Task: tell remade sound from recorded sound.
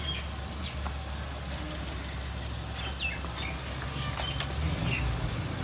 recorded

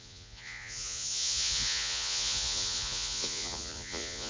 remade